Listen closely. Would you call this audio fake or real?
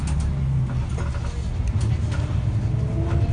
real